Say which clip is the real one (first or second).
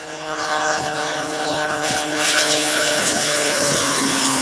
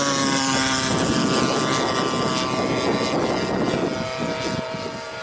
second